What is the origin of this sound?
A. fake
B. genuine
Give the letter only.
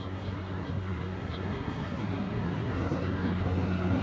A